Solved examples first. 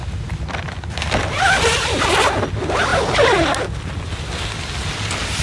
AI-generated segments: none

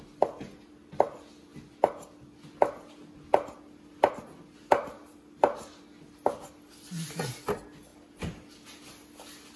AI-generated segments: none

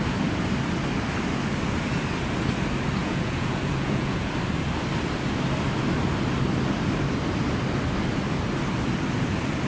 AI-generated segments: 3.0-4.3 (vocoder, Vocos)

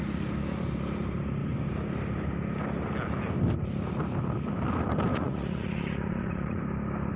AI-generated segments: 5.1-6.6 (vocoder, Vocos)

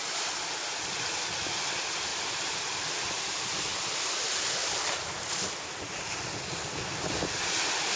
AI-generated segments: 2.1-3.4 (vocoder, BigVGAN v2)

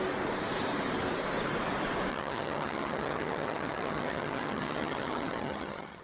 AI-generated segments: 2.1-6.0 (vocoder, HiFi-GAN)